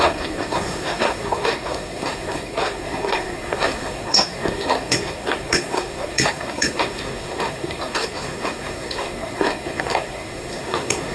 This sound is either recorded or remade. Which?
remade